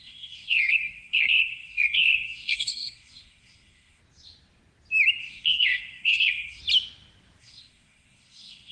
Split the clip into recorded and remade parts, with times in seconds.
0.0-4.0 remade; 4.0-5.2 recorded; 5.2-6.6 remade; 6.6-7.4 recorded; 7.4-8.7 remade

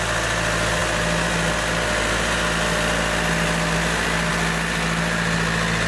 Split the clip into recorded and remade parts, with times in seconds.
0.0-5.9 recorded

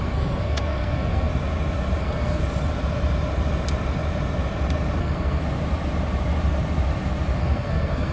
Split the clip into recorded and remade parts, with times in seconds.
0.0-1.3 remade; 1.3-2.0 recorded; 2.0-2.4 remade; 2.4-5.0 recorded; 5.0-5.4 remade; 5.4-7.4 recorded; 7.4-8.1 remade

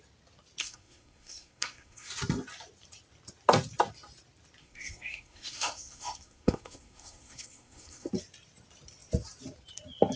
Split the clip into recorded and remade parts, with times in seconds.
0.0-0.6 recorded; 0.6-2.1 remade; 2.1-4.6 recorded; 4.6-8.1 remade; 8.1-10.2 recorded

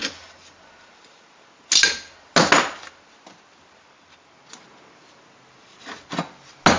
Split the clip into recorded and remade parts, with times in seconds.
0.0-6.8 recorded

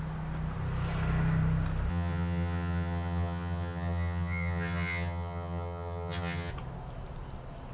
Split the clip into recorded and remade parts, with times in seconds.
0.0-1.9 recorded; 1.9-6.5 remade; 6.5-7.7 recorded

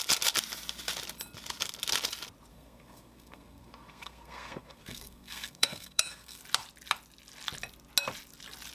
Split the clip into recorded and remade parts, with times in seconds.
0.0-2.5 recorded; 2.5-6.4 remade; 6.4-8.7 recorded